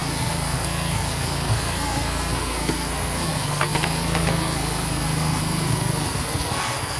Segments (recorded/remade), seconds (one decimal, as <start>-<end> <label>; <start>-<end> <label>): 0.0-7.0 remade